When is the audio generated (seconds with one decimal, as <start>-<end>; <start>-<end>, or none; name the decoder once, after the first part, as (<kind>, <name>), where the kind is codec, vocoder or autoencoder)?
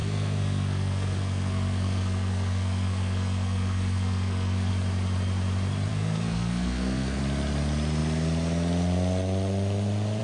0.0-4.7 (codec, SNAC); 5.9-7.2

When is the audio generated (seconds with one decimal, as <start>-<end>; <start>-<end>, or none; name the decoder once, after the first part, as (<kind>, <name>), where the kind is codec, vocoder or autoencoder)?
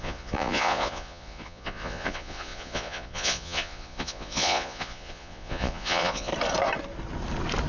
0.0-6.3 (vocoder, Vocos)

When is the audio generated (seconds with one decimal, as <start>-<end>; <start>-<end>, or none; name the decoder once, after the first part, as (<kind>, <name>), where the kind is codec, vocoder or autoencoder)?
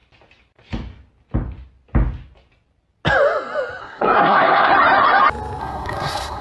3.8-4.7 (codec, SNAC); 5.6-6.4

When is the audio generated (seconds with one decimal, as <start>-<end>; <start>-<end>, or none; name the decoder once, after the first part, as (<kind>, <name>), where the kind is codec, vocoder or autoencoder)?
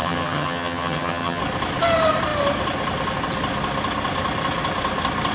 0.0-1.4 (vocoder, HiFi-GAN)